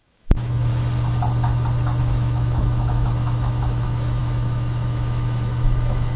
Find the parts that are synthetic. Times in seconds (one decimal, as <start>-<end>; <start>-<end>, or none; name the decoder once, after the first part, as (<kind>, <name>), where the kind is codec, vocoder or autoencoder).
0.0-0.7 (autoencoder, DAC-VAE); 2.0-6.2